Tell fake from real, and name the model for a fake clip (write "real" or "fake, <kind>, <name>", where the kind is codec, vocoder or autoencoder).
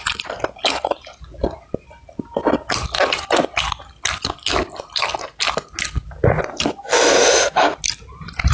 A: real